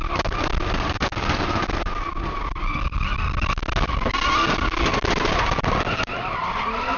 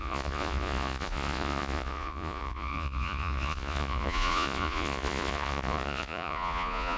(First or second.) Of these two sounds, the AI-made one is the second